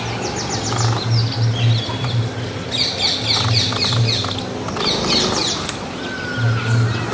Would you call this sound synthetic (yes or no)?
no